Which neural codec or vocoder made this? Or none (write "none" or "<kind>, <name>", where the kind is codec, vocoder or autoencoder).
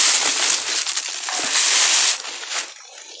none